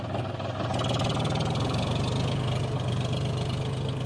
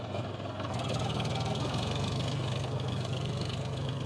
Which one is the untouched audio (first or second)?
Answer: first